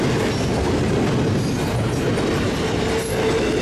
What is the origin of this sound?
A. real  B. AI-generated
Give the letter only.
A